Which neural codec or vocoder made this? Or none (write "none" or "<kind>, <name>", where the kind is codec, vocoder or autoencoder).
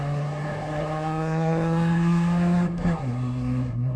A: codec, SNAC